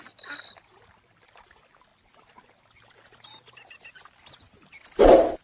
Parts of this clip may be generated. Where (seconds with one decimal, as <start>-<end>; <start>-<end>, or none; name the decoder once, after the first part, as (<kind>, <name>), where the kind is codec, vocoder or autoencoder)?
none